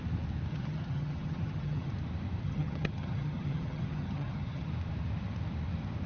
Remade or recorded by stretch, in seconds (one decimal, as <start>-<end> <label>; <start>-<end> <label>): 0.0-0.5 recorded; 0.5-1.9 remade; 1.9-2.4 recorded; 2.4-4.7 remade; 4.7-6.1 recorded